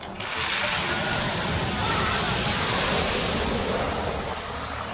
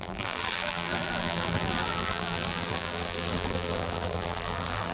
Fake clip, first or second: second